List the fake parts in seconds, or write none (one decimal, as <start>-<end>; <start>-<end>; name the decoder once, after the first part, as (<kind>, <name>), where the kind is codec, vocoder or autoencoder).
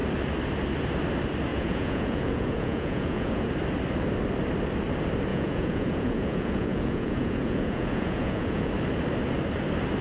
1.5-3.5 (vocoder, Vocos); 5.3-8.7